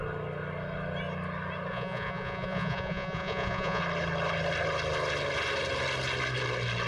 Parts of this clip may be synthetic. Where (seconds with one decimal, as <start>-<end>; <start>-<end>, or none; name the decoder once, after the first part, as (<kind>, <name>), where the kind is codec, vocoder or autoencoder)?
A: 1.7-3.8 (vocoder, Vocos)